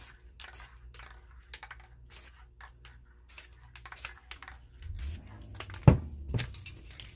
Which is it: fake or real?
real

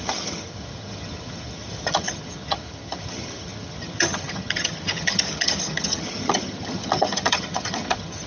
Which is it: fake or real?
fake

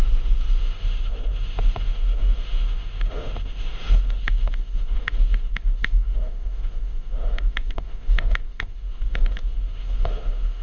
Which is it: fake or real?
fake